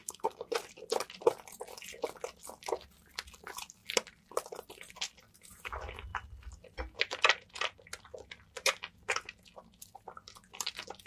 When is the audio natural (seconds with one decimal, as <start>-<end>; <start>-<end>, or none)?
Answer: 0.5-11.1